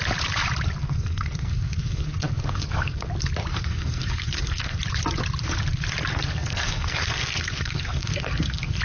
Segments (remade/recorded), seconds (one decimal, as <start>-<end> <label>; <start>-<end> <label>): 0.0-0.8 recorded; 0.8-3.1 remade; 3.1-3.5 recorded; 3.5-4.8 remade; 4.8-6.1 recorded; 6.1-8.8 remade